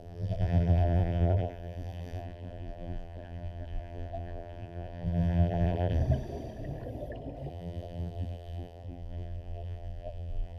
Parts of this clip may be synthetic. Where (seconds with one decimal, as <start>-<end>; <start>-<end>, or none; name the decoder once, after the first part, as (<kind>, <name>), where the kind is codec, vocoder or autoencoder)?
0.0-6.0 (vocoder, BigVGAN v2); 7.5-10.6